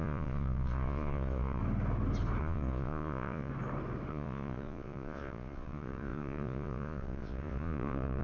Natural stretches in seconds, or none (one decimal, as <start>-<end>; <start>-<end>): 1.6-2.4; 3.5-4.1